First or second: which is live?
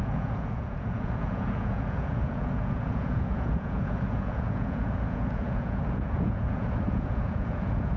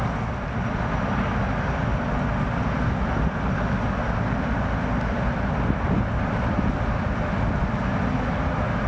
second